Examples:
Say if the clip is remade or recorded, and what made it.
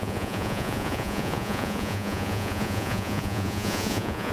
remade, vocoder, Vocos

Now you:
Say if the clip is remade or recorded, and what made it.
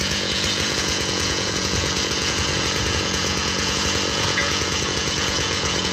remade, vocoder, Vocos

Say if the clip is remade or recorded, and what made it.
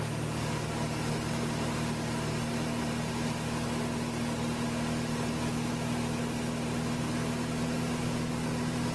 recorded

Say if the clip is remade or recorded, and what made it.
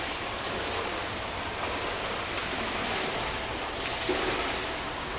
recorded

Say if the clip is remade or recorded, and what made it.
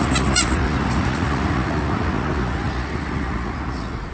remade, vocoder, Vocos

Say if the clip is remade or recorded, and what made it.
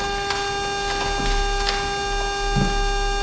recorded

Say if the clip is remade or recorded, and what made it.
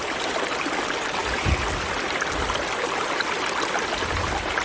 recorded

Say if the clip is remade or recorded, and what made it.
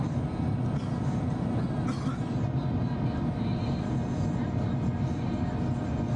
recorded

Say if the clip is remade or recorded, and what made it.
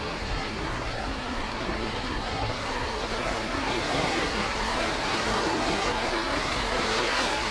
remade, codec, SNAC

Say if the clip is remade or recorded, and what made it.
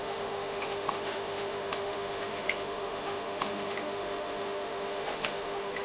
remade, autoencoder, DAC-VAE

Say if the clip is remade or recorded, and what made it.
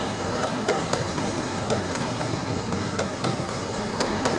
remade, codec, SNAC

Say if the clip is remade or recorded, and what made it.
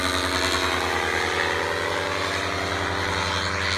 recorded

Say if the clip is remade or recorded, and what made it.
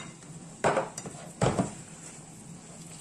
remade, vocoder, BigVGAN v2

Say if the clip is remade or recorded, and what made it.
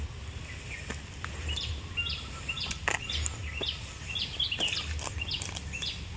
recorded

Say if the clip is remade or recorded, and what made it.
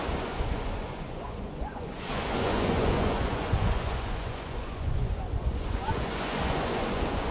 remade, vocoder, Vocos